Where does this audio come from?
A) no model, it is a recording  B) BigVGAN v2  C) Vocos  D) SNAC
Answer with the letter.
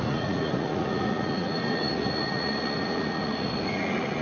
C